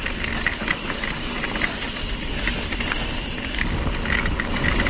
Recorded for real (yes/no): yes